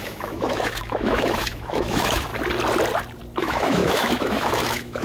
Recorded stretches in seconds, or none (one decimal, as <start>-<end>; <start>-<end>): 2.3-3.4